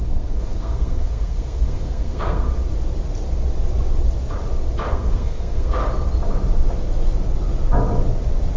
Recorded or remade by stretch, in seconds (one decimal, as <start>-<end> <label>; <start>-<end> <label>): 0.0-2.5 remade; 2.5-4.9 recorded; 4.9-5.8 remade; 5.8-8.6 recorded